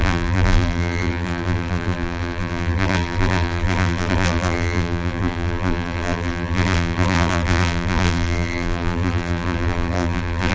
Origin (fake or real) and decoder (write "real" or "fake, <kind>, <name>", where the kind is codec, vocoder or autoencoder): fake, vocoder, BigVGAN v2